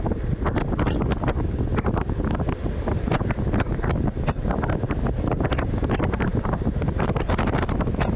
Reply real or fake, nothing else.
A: real